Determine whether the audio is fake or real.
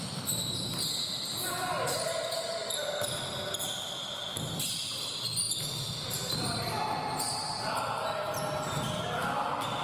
real